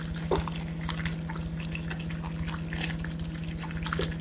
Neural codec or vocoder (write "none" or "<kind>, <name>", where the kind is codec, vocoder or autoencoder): none